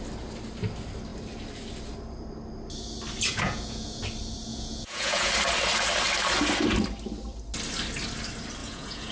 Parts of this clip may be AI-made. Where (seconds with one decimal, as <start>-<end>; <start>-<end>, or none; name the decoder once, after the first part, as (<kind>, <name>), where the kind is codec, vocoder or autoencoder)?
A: 3.3-4.0 (vocoder, Vocos); 4.5-5.3; 8.6-9.1